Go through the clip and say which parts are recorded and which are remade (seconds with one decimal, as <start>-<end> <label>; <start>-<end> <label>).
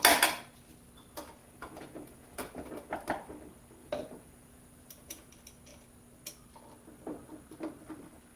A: 0.0-1.4 recorded; 1.4-2.7 remade; 2.7-3.8 recorded; 3.8-5.3 remade; 5.3-8.4 recorded